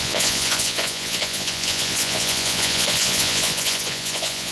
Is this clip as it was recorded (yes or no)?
no